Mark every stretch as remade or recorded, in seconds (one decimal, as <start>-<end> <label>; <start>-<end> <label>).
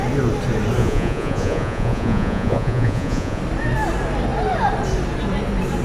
0.0-0.8 recorded; 0.8-3.4 remade; 3.4-5.8 recorded